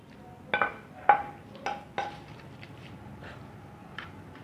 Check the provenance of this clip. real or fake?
real